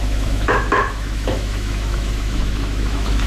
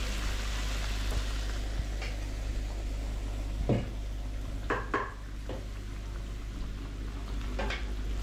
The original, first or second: second